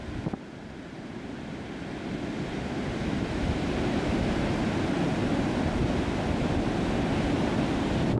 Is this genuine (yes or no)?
yes